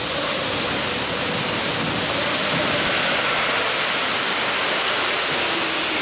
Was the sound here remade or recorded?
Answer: recorded